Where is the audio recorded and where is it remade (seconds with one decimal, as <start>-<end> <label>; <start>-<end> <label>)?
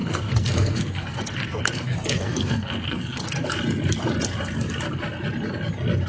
0.0-3.5 remade; 3.5-6.1 recorded